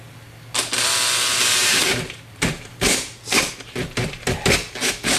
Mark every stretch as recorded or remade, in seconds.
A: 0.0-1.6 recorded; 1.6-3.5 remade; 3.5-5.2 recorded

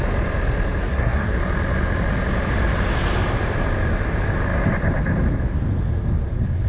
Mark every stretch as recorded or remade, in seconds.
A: 0.0-0.8 recorded; 0.8-1.4 remade; 1.4-6.7 recorded